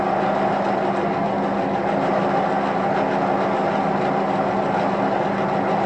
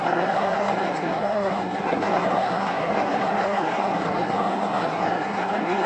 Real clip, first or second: first